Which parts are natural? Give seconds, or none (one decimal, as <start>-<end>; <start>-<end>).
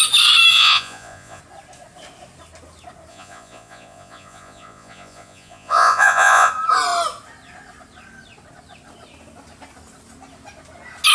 0.0-0.5; 1.4-3.1; 6.5-11.1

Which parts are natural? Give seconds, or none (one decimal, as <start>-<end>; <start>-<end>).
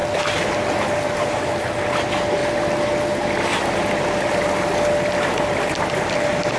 0.0-6.6